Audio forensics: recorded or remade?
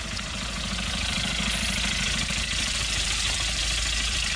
remade